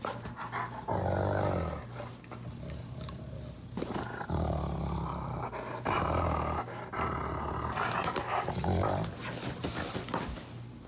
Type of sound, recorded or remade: recorded